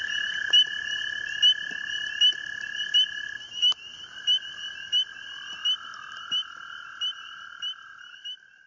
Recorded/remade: recorded